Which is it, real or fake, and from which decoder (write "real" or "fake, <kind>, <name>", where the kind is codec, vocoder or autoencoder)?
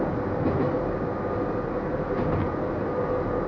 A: real